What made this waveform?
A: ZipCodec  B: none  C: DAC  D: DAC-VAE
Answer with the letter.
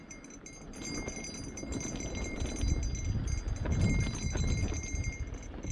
B